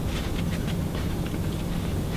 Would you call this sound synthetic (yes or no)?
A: no